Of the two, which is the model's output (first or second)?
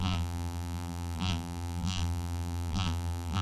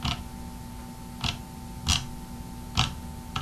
first